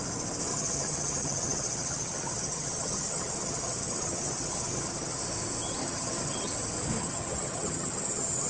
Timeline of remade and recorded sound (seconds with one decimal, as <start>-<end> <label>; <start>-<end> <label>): 0.0-0.5 recorded; 0.5-5.2 remade; 5.2-5.8 recorded; 5.8-6.5 remade; 6.5-7.0 recorded; 7.0-8.5 remade